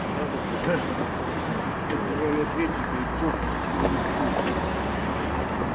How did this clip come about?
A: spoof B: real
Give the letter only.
B